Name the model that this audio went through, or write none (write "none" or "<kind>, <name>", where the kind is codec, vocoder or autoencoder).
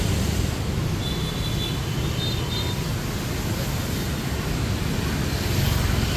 none